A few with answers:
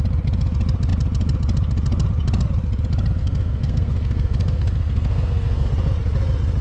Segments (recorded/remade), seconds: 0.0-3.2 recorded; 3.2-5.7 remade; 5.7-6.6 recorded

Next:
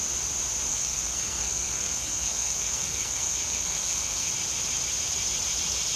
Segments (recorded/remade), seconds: 0.0-0.7 recorded; 0.7-4.3 remade; 4.3-6.0 recorded

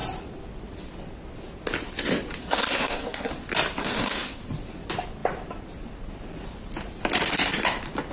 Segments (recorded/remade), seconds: 0.0-2.4 recorded; 2.4-3.3 remade; 3.3-3.8 recorded; 3.8-4.4 remade; 4.4-8.1 recorded

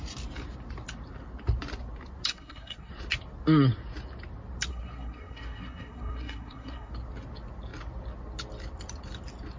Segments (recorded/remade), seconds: 0.0-2.3 recorded; 2.3-2.9 remade; 2.9-4.7 recorded; 4.7-6.9 remade; 6.9-9.6 recorded

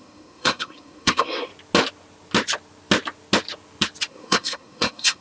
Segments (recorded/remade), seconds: 0.0-1.5 remade; 1.5-4.1 recorded; 4.1-5.2 remade

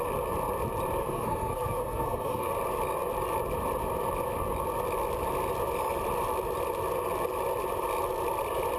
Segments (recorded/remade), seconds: 0.0-1.0 recorded; 1.0-2.5 remade; 2.5-8.8 recorded

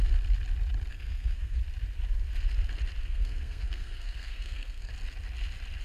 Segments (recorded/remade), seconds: 0.0-0.9 recorded; 0.9-1.6 remade; 1.6-3.0 recorded; 3.0-4.9 remade; 4.9-5.8 recorded

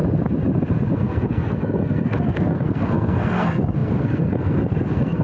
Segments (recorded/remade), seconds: 0.0-0.9 recorded; 0.9-5.2 remade